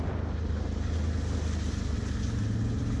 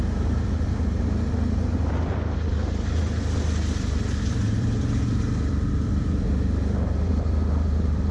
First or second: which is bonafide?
first